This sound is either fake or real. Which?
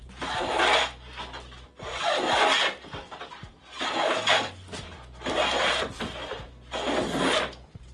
real